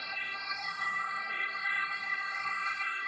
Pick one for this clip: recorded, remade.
remade